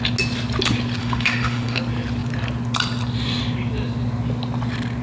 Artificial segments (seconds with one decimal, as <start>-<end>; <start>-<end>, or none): 1.0-1.8